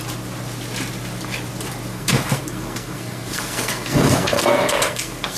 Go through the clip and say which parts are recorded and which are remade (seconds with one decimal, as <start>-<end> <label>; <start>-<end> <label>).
0.0-1.9 recorded; 1.9-5.4 remade